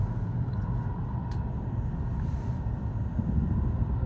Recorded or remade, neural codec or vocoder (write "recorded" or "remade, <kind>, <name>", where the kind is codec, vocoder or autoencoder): recorded